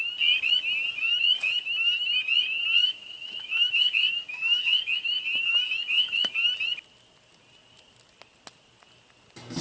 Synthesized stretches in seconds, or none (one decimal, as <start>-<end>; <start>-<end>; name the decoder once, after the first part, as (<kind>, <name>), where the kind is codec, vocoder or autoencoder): 2.8-6.3 (autoencoder, DAC-VAE)